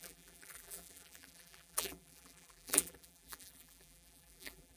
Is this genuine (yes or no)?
no